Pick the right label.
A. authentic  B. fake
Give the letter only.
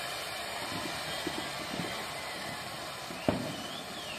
A